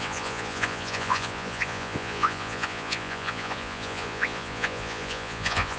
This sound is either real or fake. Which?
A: fake